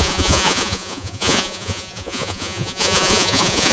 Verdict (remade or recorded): remade